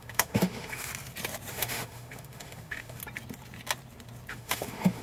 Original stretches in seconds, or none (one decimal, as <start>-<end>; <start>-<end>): 0.9-1.5; 3.0-4.3